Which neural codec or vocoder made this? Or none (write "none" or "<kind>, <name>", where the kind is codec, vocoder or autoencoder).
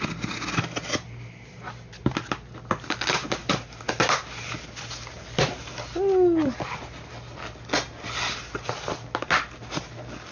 none